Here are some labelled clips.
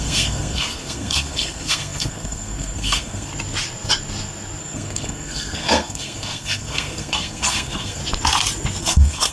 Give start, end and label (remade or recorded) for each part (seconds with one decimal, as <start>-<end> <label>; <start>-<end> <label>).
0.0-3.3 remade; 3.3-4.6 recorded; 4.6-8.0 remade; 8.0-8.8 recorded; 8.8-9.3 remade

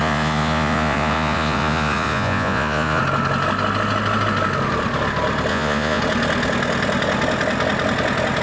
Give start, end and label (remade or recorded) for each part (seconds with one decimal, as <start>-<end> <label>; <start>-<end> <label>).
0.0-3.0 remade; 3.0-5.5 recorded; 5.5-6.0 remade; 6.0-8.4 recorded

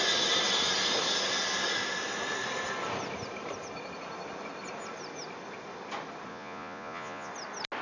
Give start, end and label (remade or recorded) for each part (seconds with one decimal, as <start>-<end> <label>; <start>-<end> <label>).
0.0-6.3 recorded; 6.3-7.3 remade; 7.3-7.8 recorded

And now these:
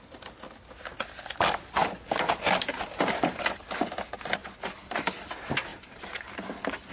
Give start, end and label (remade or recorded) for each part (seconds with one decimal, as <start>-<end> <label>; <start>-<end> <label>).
0.0-4.4 recorded; 4.4-4.9 remade; 4.9-5.7 recorded; 5.7-6.9 remade

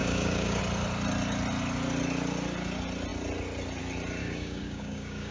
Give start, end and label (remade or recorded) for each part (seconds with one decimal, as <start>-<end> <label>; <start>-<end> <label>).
0.0-0.6 remade; 0.6-4.2 recorded; 4.2-5.3 remade

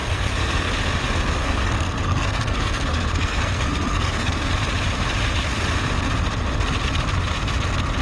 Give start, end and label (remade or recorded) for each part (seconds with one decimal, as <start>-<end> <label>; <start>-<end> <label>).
0.0-0.7 remade; 0.7-1.4 recorded; 1.4-4.5 remade; 4.5-8.0 recorded

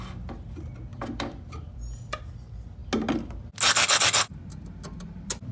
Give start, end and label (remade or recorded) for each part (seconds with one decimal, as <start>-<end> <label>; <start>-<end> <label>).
0.0-0.9 recorded; 0.9-2.2 remade; 2.2-5.5 recorded

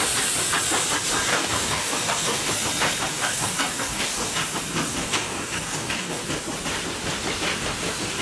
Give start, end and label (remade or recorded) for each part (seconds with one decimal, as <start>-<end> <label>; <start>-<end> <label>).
0.0-1.3 recorded; 1.3-2.5 remade; 2.5-3.1 recorded; 3.1-4.4 remade; 4.4-4.9 recorded; 4.9-6.2 remade; 6.2-8.2 recorded